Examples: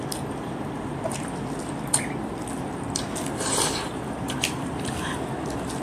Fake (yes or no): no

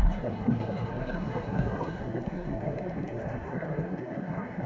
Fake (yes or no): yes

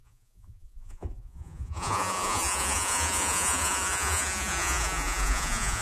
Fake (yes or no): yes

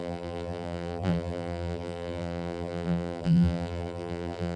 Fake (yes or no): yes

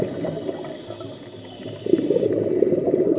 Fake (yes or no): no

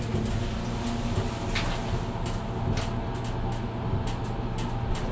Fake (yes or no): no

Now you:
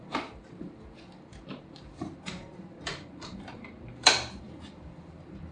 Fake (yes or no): yes